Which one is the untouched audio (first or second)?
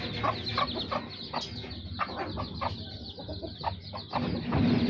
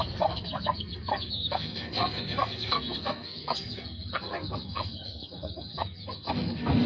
first